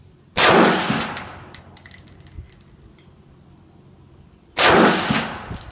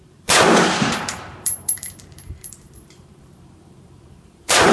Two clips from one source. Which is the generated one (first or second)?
second